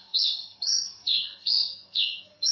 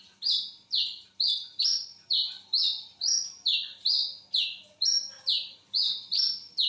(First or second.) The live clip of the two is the second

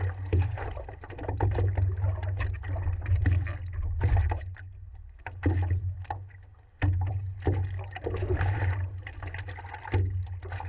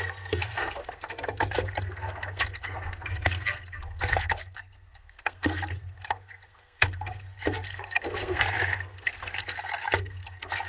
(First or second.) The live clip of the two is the first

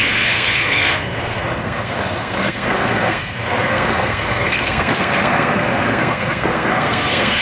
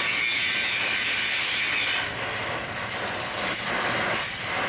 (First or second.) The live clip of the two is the second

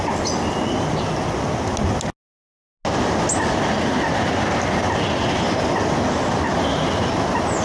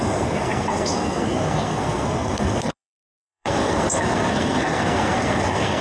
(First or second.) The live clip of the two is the first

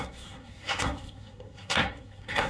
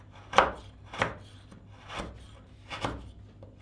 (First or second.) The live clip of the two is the second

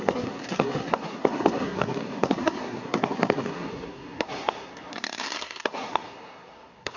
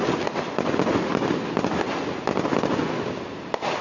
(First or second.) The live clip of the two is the second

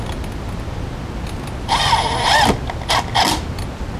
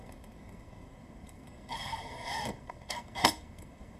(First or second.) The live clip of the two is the first